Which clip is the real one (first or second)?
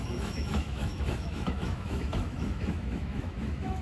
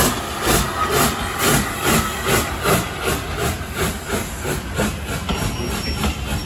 second